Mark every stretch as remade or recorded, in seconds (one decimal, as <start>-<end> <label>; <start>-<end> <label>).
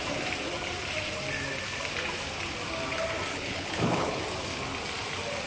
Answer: 0.0-3.3 recorded; 3.3-4.2 remade; 4.2-5.5 recorded